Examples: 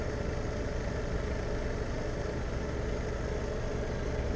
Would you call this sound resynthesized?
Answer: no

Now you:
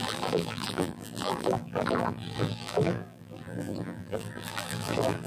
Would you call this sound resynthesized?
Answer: yes